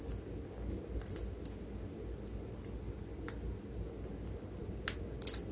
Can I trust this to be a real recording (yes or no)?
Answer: yes